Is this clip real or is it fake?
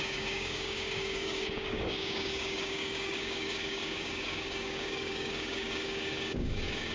fake